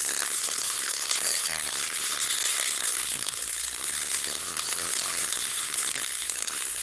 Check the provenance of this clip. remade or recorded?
remade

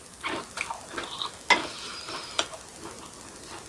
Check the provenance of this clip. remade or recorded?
recorded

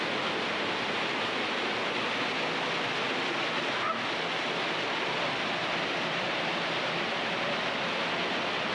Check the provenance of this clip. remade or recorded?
recorded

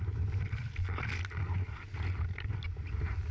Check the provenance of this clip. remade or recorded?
recorded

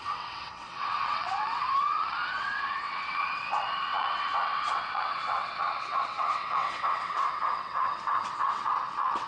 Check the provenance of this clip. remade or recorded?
remade